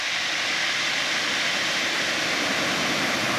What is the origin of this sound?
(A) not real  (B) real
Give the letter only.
B